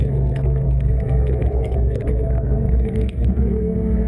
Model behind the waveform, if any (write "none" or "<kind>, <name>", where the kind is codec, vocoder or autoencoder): codec, SNAC